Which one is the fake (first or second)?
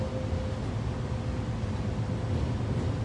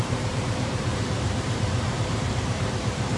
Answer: second